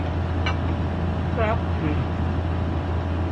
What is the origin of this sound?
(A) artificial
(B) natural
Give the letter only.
B